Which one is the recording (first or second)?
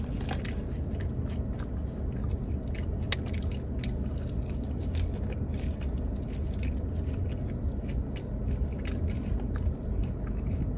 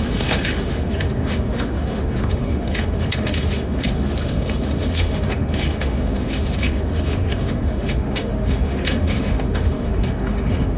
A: first